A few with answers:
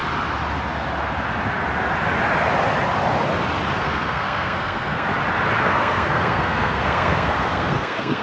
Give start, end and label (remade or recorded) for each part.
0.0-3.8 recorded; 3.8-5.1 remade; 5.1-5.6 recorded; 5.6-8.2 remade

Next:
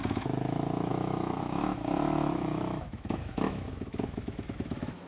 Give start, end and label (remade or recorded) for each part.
0.0-5.1 remade

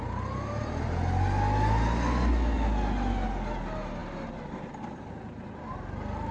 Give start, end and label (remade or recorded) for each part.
0.0-6.3 recorded

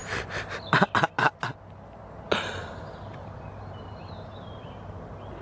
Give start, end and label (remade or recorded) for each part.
0.0-5.4 recorded

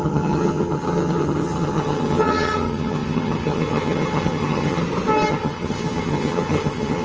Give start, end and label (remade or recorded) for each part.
0.0-4.8 remade; 4.8-5.3 recorded; 5.3-7.0 remade

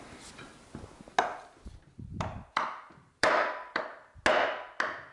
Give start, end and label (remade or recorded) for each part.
0.0-1.3 recorded; 1.3-3.8 remade; 3.8-5.1 recorded

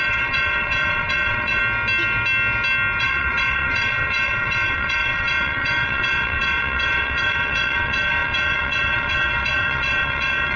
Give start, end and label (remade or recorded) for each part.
0.0-1.6 remade; 1.6-3.0 recorded; 3.0-10.6 remade

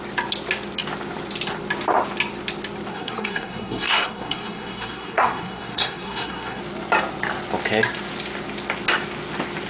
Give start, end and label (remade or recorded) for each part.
0.0-2.9 recorded; 2.9-6.6 remade; 6.6-9.7 recorded